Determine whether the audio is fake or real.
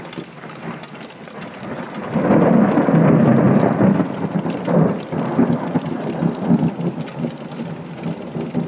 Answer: real